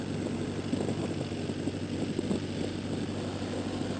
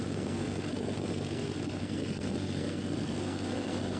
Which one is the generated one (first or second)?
second